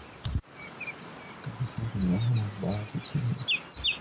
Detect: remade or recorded recorded